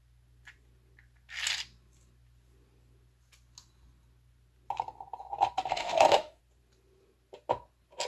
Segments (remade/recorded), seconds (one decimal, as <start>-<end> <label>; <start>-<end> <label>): 0.0-5.7 recorded; 5.7-6.4 remade; 6.4-8.1 recorded